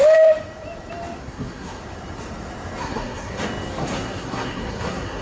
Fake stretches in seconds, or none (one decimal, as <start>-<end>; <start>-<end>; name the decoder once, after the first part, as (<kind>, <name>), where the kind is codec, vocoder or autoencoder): 1.2-1.8 (codec, SNAC); 2.8-3.4; 3.8-5.2